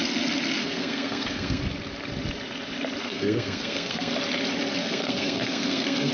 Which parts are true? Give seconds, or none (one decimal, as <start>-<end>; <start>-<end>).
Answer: 0.0-0.6; 1.6-3.0; 4.1-4.8